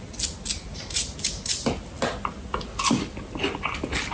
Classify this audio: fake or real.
real